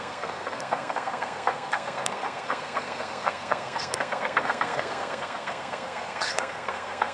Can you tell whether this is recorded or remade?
remade